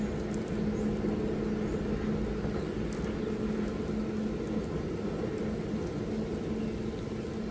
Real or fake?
real